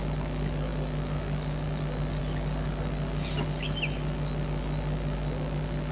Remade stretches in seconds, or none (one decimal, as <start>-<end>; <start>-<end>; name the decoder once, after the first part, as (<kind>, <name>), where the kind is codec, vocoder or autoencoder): none